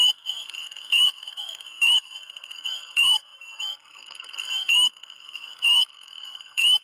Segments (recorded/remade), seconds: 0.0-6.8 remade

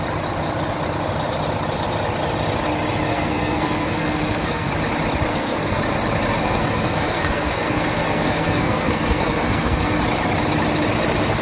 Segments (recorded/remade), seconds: 0.0-3.1 recorded; 3.1-4.7 remade; 4.7-5.3 recorded; 5.3-5.8 remade; 5.8-6.3 recorded; 6.3-10.0 remade; 10.0-11.4 recorded

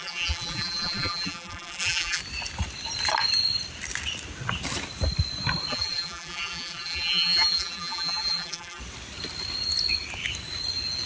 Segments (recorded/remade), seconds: 0.0-2.2 remade; 2.2-5.7 recorded; 5.7-8.8 remade; 8.8-11.1 recorded

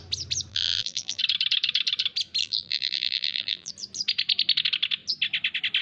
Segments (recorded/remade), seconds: 0.0-0.5 recorded; 0.5-1.2 remade; 1.2-2.4 recorded; 2.4-3.7 remade; 3.7-5.8 recorded